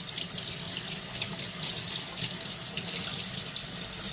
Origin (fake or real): real